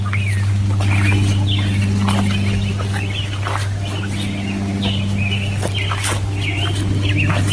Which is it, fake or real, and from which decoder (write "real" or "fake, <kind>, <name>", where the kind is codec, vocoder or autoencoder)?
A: real